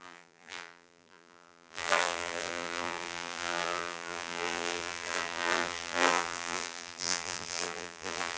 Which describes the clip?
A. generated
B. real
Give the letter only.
A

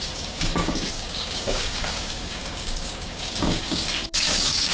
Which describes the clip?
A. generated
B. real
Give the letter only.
A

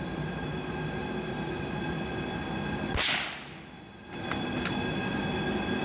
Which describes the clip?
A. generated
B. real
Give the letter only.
B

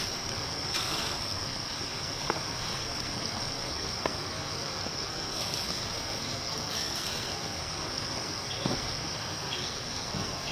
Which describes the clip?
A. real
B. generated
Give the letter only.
B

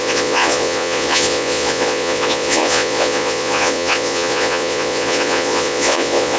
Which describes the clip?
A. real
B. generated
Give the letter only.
B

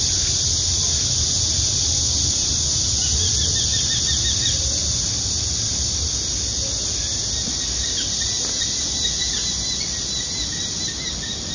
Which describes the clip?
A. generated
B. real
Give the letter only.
B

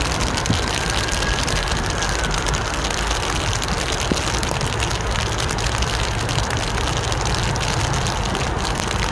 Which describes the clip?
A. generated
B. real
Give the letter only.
B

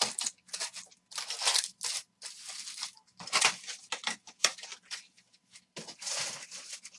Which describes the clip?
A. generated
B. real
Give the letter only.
B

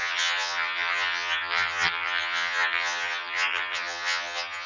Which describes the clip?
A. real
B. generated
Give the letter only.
B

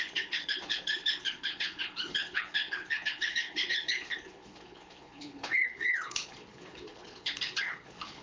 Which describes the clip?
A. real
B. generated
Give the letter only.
B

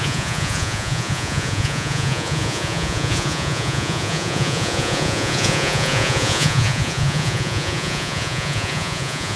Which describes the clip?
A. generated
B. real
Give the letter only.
A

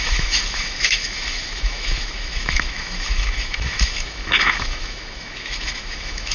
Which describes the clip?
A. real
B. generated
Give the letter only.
B